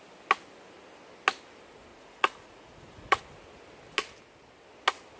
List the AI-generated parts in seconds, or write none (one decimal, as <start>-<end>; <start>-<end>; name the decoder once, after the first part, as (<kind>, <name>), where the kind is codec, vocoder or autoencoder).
1.9-3.2 (vocoder, Vocos)